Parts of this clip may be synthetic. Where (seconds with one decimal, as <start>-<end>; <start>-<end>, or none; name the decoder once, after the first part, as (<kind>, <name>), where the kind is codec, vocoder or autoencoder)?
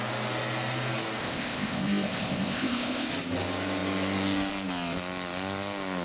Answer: 1.2-3.1 (codec, ZipCodec)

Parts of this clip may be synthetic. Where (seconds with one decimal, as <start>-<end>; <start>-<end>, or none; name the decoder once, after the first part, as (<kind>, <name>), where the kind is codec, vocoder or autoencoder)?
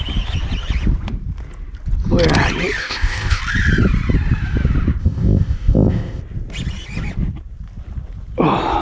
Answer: 2.8-3.4 (codec, ZipCodec); 5.0-6.2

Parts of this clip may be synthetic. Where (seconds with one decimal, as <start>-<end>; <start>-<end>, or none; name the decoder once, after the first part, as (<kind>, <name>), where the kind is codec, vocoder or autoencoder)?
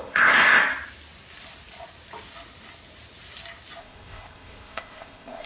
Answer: 0.0-0.6 (codec, ZipCodec); 3.8-5.5